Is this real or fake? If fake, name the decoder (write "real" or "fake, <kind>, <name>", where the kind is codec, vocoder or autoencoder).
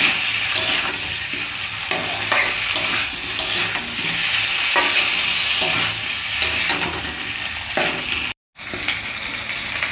real